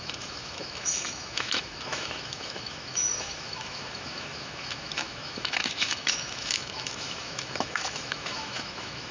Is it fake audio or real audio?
fake